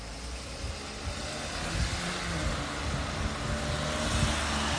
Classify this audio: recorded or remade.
recorded